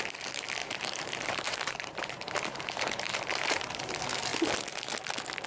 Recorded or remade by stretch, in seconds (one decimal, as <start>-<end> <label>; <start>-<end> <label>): 0.0-0.6 recorded; 0.6-3.9 remade; 3.9-5.5 recorded